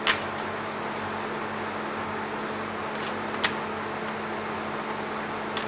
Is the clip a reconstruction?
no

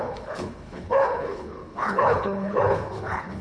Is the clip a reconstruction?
yes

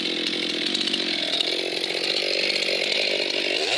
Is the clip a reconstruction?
no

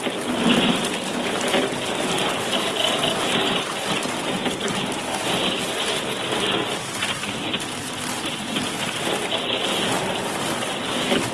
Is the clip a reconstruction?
no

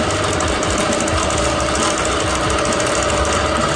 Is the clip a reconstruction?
no